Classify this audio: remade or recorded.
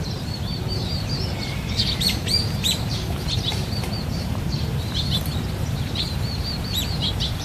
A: remade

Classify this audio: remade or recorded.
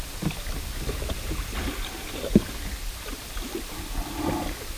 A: recorded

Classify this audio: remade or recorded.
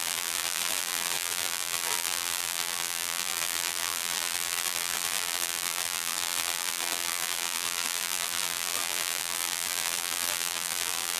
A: remade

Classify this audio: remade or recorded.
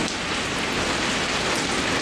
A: recorded